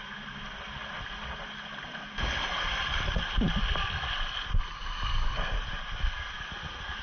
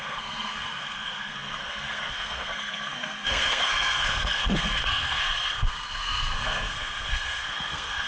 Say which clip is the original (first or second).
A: first